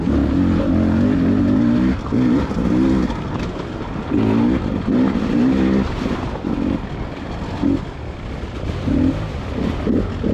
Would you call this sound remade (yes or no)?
no